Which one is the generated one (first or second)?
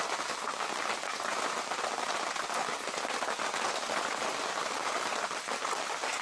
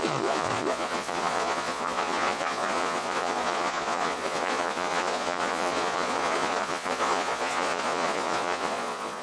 second